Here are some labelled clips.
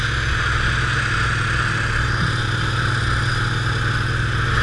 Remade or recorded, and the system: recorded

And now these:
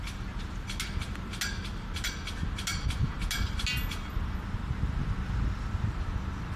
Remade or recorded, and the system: recorded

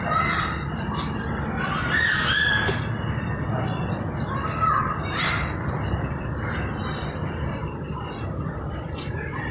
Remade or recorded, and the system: remade, vocoder, BigVGAN v2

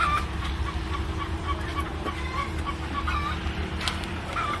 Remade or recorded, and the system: recorded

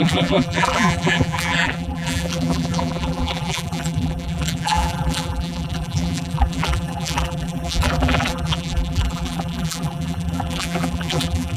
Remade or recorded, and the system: remade, vocoder, BigVGAN v2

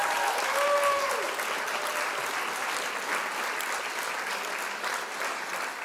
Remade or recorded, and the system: recorded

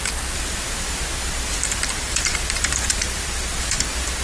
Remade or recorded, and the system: remade, vocoder, BigVGAN v2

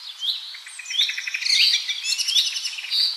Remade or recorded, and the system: recorded